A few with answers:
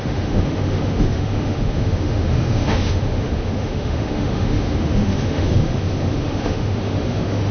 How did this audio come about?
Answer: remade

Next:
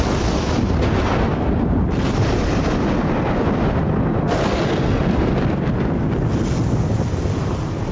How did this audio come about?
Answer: recorded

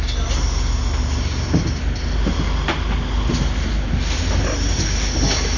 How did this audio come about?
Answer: recorded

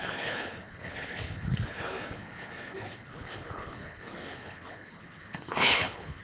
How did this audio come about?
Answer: remade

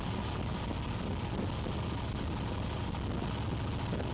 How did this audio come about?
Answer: recorded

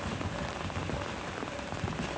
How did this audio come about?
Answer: recorded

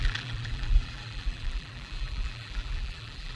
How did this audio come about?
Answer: remade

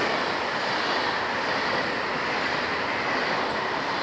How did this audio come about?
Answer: recorded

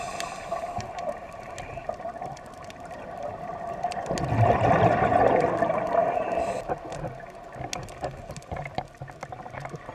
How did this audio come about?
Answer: recorded